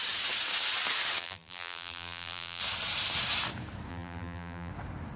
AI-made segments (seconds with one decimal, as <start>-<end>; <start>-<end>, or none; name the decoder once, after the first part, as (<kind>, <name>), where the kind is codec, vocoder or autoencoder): 1.2-2.6 (vocoder, BigVGAN v2); 3.9-4.7